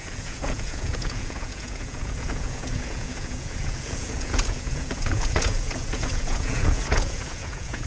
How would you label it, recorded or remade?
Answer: remade